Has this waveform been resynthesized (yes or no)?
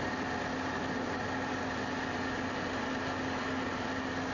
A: no